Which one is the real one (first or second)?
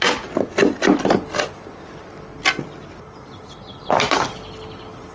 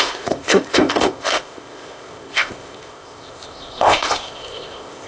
first